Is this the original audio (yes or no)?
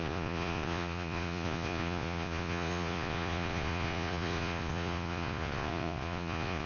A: no